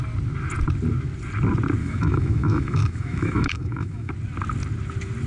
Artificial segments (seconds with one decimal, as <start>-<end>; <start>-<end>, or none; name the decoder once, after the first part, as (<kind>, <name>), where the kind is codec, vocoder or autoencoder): 1.8-4.1 (autoencoder, DAC-VAE)

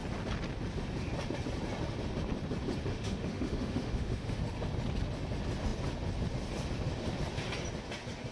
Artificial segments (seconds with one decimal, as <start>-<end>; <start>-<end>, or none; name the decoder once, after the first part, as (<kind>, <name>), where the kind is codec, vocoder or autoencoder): 2.9-4.4 (autoencoder, DAC-VAE)

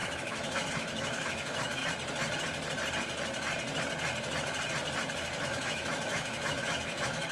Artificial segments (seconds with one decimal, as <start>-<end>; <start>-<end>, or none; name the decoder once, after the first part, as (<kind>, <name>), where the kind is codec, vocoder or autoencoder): 0.0-1.8 (autoencoder, DAC-VAE); 5.4-7.3